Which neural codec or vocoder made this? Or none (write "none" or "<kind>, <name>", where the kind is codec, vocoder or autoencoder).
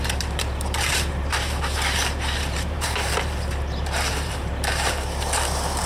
vocoder, BigVGAN v2